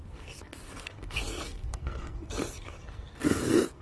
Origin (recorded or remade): remade